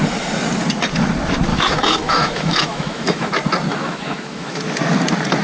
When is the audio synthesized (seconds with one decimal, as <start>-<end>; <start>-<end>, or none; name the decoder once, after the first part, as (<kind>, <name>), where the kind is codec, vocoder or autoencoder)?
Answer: 1.5-3.3 (autoencoder, DAC-VAE); 3.7-4.6